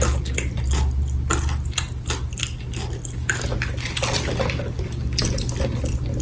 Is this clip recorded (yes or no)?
yes